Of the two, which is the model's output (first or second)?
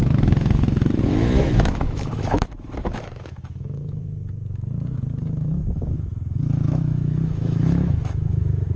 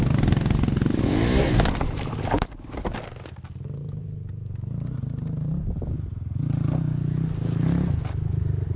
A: first